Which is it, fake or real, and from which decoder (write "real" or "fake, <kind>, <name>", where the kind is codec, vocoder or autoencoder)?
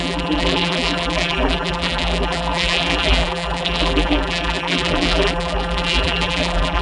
fake, vocoder, BigVGAN v2